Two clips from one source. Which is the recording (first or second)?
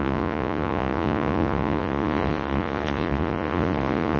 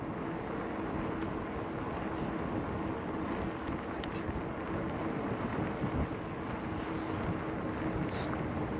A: second